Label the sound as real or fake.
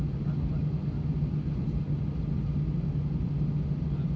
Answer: real